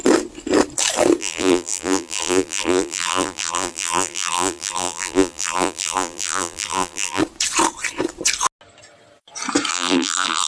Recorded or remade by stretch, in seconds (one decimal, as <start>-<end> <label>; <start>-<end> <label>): 0.0-1.2 recorded; 1.2-7.2 remade; 7.2-9.7 recorded; 9.7-10.5 remade